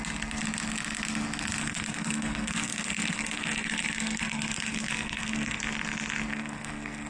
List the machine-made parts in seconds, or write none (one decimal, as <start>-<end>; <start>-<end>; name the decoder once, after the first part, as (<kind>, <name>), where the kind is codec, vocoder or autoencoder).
1.6-5.6 (codec, SNAC); 6.3-7.1